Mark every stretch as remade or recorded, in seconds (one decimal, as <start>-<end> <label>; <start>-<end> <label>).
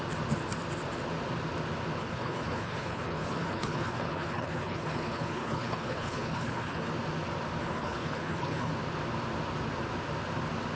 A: 0.0-2.0 recorded; 2.0-6.9 remade; 6.9-7.6 recorded; 7.6-8.7 remade; 8.7-10.8 recorded